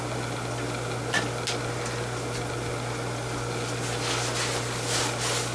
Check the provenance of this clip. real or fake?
real